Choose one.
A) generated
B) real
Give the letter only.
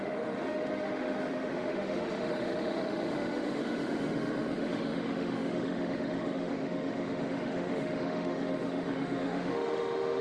A